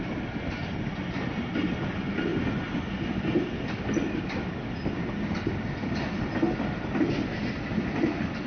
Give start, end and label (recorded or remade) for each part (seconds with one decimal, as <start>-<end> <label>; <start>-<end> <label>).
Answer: 0.0-8.5 recorded